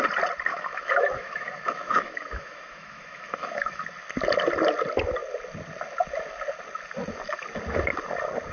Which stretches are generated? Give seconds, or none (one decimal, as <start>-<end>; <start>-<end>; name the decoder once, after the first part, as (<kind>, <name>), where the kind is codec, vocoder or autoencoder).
0.5-3.8 (autoencoder, DAC-VAE)